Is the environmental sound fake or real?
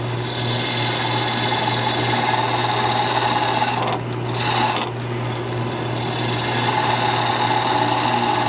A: real